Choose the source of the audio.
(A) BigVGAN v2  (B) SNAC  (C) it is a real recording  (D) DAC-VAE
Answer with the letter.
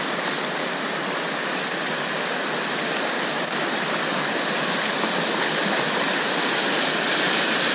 C